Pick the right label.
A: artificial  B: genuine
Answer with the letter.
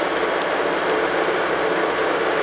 B